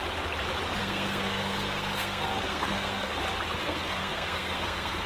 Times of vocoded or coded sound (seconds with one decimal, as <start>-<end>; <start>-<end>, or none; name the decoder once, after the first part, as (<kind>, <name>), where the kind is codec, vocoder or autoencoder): 0.8-3.1 (codec, SNAC); 3.6-5.1